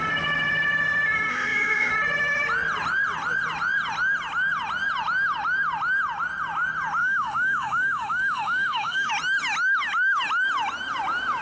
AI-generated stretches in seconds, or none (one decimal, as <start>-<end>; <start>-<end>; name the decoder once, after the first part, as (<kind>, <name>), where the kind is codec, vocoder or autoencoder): 1.3-1.9 (autoencoder, DAC-VAE); 7.0-9.1